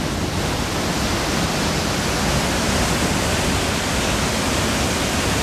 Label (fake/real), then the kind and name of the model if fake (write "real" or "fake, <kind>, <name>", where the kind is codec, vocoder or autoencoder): real